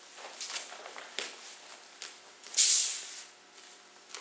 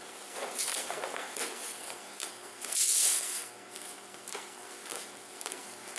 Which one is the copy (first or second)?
second